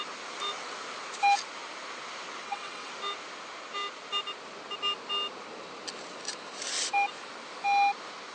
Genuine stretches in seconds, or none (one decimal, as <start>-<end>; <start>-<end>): 0.0-2.4; 2.9-8.3